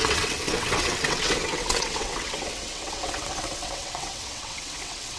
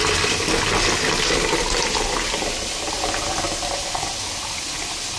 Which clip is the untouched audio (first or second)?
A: second